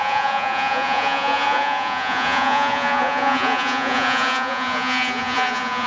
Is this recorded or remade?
remade